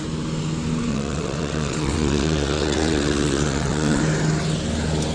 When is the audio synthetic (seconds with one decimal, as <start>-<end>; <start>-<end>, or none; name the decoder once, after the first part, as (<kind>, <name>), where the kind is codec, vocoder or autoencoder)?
0.9-4.0 (vocoder, WaveNeXt)